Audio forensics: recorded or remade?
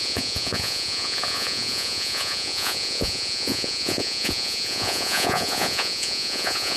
remade